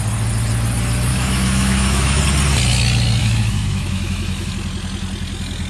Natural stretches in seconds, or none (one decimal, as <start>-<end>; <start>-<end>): 0.0-1.1; 2.2-3.2; 4.5-5.7